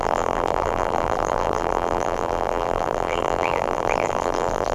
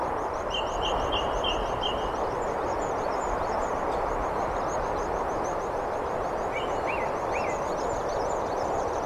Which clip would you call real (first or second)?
second